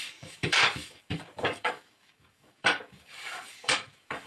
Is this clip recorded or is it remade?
remade